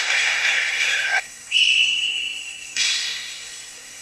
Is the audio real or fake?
fake